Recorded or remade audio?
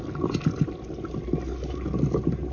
recorded